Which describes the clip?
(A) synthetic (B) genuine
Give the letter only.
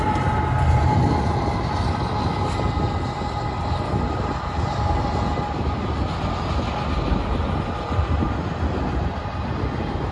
B